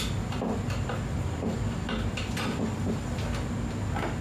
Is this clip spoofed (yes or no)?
no